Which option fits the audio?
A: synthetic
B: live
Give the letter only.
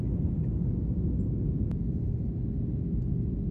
B